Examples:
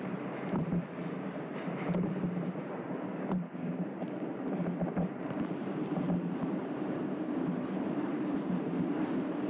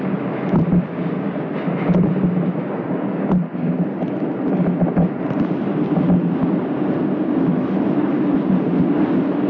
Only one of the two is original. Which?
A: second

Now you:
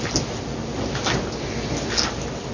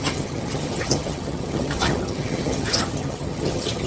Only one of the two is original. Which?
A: first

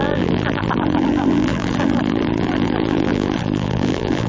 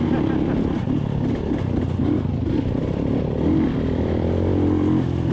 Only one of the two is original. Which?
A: second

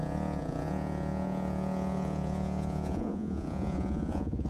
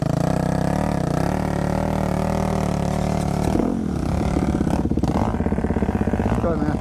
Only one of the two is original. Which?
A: second